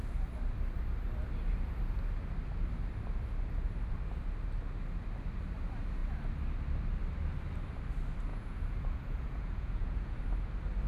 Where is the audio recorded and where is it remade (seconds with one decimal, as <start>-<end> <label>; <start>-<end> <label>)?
0.0-8.3 recorded; 8.3-10.2 remade; 10.2-10.9 recorded